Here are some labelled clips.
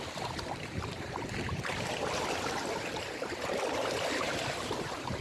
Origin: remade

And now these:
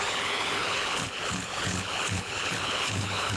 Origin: remade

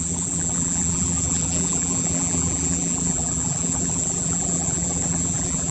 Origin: remade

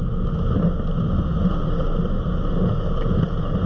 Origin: recorded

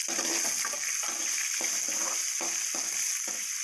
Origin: recorded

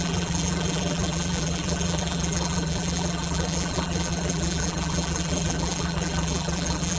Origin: remade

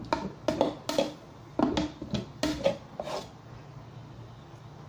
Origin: recorded